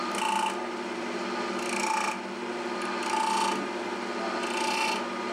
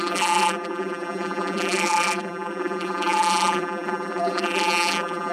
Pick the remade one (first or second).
second